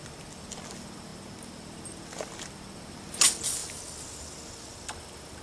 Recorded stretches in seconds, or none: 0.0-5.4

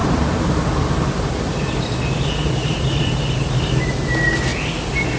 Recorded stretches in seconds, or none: 1.4-2.6; 3.7-5.2

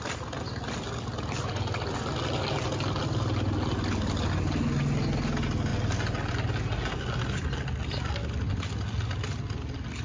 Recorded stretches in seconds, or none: 0.0-10.0

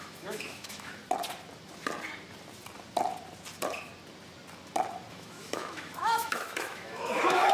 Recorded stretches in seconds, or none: 1.0-5.1

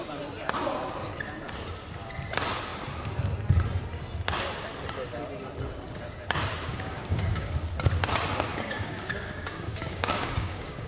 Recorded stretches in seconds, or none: 0.0-6.7; 7.6-8.5

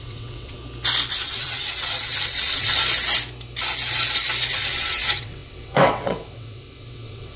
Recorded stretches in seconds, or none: 0.6-1.1; 2.8-4.5

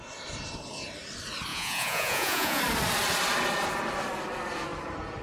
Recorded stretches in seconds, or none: 0.0-1.5; 2.6-5.2

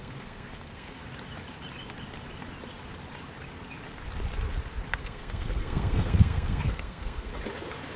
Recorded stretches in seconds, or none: 1.0-5.0; 7.3-8.0